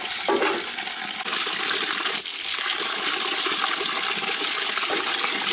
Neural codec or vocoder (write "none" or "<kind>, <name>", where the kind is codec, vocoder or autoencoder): none